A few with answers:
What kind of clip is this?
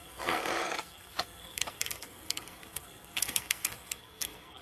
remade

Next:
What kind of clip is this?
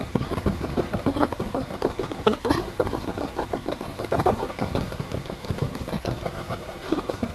remade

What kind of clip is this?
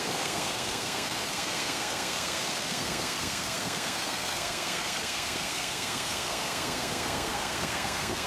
remade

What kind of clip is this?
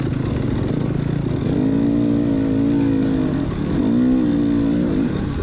recorded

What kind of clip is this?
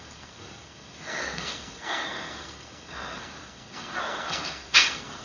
remade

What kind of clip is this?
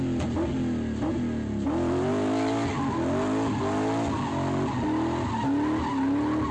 recorded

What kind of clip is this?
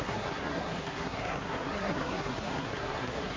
remade